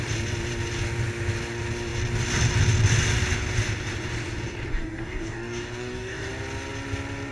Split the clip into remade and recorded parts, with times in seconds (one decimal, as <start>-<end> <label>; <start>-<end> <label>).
0.0-4.7 recorded; 4.7-6.3 remade; 6.3-7.3 recorded